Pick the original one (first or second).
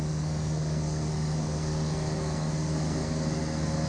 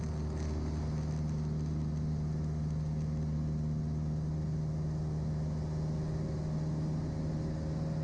second